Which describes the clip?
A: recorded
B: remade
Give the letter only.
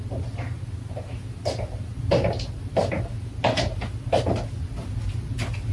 A